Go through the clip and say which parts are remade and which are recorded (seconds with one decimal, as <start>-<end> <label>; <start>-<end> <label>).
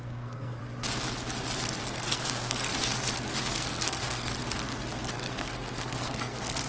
0.0-0.6 remade; 0.6-1.8 recorded; 1.8-2.7 remade; 2.7-3.4 recorded; 3.4-4.3 remade; 4.3-5.1 recorded; 5.1-6.7 remade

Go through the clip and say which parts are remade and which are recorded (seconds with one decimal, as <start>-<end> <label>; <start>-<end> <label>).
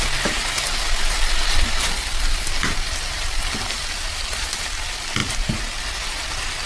0.0-6.7 recorded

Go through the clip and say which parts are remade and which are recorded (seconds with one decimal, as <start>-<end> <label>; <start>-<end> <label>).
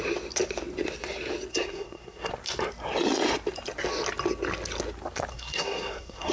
0.0-1.5 recorded; 1.5-2.3 remade; 2.3-5.3 recorded; 5.3-6.3 remade